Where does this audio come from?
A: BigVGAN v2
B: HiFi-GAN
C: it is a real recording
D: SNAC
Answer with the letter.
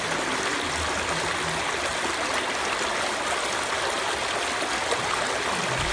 C